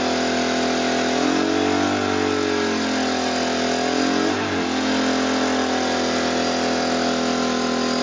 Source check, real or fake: real